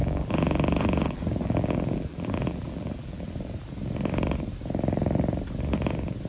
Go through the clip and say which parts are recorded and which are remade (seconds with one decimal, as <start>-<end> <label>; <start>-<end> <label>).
0.0-3.3 remade; 3.3-6.3 recorded